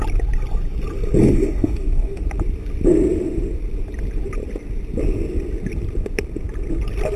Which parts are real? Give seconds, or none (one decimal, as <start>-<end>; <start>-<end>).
0.0-1.2; 2.2-7.2